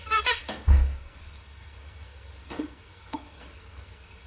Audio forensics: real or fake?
fake